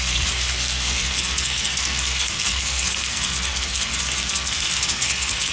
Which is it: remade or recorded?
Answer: remade